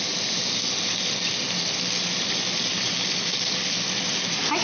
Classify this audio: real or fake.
real